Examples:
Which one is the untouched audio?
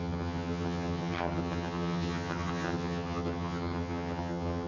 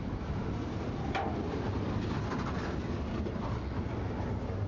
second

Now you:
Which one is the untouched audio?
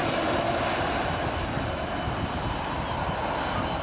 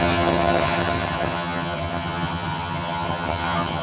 first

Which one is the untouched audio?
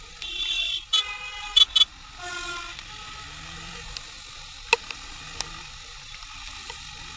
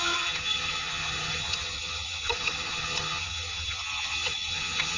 first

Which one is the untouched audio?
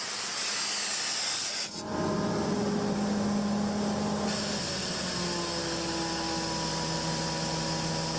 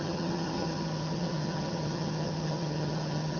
first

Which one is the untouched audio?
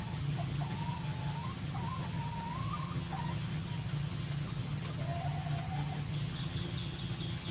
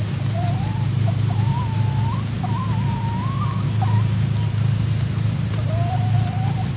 second